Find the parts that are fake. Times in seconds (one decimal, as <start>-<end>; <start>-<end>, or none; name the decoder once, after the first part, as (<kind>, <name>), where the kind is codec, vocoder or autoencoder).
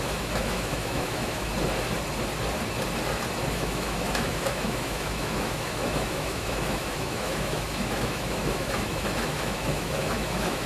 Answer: 0.0-1.5 (autoencoder, DAC-VAE); 3.5-10.7